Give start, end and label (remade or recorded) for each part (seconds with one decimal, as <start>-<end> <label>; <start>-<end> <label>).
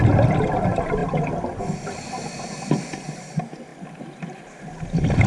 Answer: 0.0-5.3 recorded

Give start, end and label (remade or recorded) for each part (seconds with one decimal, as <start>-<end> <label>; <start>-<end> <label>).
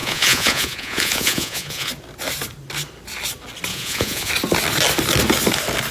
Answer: 0.0-1.9 remade; 1.9-3.7 recorded; 3.7-4.3 remade; 4.3-5.9 recorded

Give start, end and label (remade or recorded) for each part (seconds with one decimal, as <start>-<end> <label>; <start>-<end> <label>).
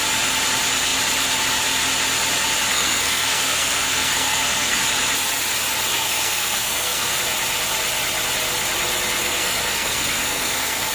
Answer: 0.0-2.7 recorded; 2.7-4.8 remade; 4.8-5.9 recorded; 5.9-7.2 remade; 7.2-9.2 recorded; 9.2-10.9 remade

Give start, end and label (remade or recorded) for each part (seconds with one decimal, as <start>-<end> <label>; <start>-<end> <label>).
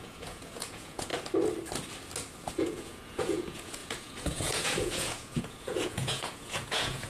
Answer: 0.0-1.1 remade; 1.1-2.5 recorded; 2.5-7.1 remade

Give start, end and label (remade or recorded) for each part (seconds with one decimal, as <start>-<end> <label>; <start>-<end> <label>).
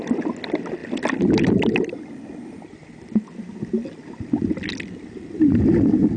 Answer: 0.0-6.2 recorded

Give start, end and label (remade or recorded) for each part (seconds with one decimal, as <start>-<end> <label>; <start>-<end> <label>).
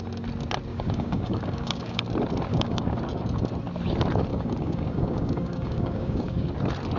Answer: 0.0-0.7 recorded; 0.7-2.0 remade; 2.0-2.5 recorded; 2.5-3.0 remade; 3.0-4.3 recorded; 4.3-6.5 remade; 6.5-7.0 recorded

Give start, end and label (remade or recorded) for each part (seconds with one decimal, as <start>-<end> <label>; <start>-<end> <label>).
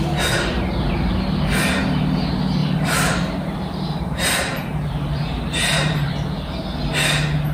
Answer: 0.0-2.6 recorded; 2.6-6.1 remade; 6.1-7.5 recorded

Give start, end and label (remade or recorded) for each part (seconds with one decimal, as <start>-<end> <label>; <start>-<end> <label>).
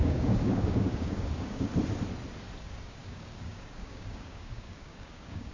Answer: 0.0-1.7 remade; 1.7-2.6 recorded; 2.6-5.5 remade